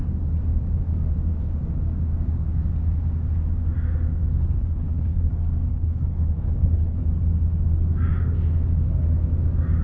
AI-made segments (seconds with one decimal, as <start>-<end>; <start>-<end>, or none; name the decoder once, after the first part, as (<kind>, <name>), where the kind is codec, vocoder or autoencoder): 4.6-5.3 (codec, HILCodec); 5.7-7.0